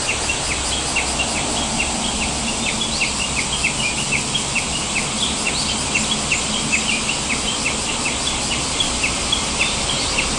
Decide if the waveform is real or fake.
real